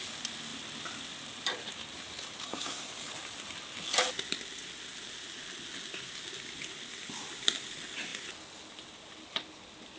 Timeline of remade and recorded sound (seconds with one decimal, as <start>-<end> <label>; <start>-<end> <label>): 0.0-2.4 recorded; 2.4-2.9 remade; 2.9-10.0 recorded